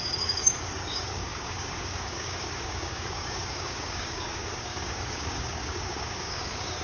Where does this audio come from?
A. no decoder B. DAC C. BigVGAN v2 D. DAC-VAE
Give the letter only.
B